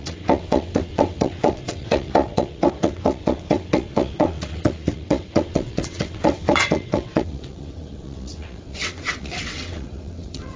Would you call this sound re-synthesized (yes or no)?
yes